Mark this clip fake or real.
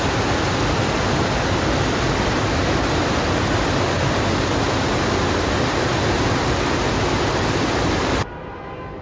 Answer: real